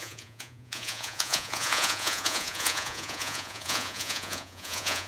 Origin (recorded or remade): remade